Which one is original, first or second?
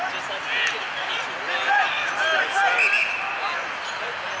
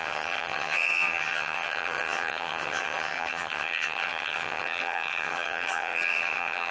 first